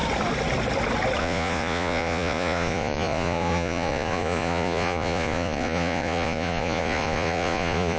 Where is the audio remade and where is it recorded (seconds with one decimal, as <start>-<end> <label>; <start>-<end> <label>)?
0.0-1.2 recorded; 1.2-8.0 remade

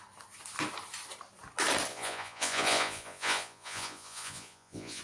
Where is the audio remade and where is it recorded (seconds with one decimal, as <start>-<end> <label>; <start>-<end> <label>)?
0.0-1.9 recorded; 1.9-5.0 remade

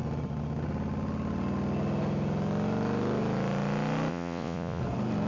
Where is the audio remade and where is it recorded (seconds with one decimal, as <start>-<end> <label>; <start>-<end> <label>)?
0.0-4.1 recorded; 4.1-4.8 remade; 4.8-5.3 recorded

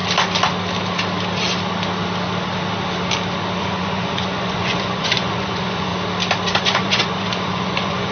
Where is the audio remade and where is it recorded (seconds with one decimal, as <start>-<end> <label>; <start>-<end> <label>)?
0.0-3.6 recorded; 3.6-5.9 remade; 5.9-6.6 recorded; 6.6-8.1 remade

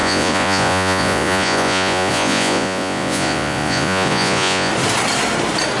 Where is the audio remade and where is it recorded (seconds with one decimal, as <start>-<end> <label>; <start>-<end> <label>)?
0.0-4.7 remade; 4.7-5.8 recorded